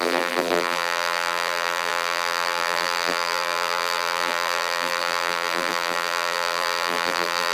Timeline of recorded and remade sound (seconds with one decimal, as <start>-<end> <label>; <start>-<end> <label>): 0.0-7.5 remade